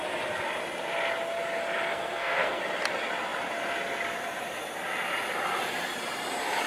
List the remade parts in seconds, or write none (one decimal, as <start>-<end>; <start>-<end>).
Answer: 1.9-2.6